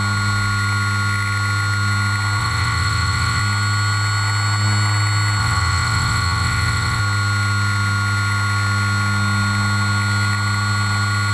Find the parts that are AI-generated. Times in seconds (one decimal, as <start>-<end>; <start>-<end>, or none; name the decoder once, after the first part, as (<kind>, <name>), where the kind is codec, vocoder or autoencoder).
2.4-3.4 (vocoder, WaveNeXt); 5.4-7.0

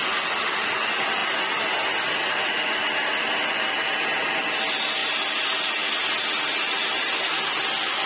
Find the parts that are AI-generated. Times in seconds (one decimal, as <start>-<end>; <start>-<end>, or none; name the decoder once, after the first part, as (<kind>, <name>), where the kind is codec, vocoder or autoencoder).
none

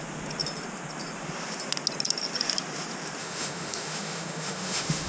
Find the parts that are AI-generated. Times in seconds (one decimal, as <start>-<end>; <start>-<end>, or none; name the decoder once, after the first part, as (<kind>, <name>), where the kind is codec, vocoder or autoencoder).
3.2-5.1 (autoencoder, DAC-VAE)

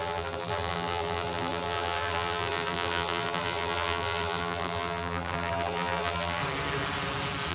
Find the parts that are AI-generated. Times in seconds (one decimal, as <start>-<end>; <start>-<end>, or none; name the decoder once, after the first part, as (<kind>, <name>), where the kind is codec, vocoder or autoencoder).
0.0-6.4 (vocoder, BigVGAN v2)

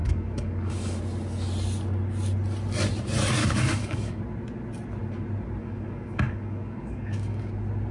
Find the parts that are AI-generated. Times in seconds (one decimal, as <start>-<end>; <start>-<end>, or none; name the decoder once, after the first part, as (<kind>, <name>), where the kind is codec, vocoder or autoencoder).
0.0-1.0 (codec, DAC); 3.4-4.2; 5.6-7.5

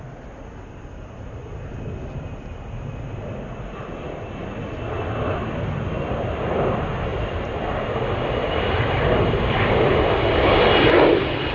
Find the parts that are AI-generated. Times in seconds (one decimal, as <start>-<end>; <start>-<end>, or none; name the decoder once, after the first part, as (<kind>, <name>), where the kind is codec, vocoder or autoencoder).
none

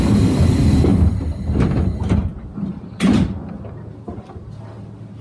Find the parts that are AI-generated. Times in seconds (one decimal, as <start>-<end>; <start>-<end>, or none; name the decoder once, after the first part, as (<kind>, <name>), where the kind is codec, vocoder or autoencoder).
0.9-1.9 (vocoder, BigVGAN v2); 2.3-3.5

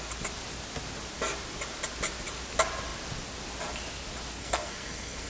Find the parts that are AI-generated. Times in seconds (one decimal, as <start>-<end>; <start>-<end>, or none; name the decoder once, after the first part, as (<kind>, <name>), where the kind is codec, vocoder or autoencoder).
4.4-5.3 (codec, SNAC)